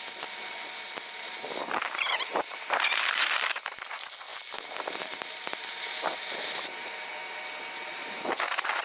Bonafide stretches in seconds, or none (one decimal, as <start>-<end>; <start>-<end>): 0.0-1.6; 3.6-4.3; 7.1-7.9